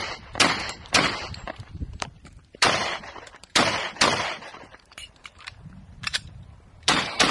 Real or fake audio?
fake